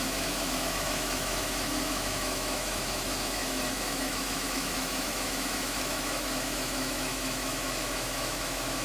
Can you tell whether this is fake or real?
fake